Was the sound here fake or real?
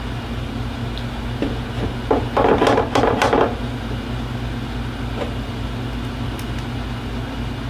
real